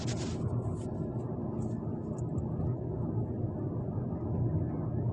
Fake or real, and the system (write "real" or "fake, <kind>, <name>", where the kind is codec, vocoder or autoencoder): real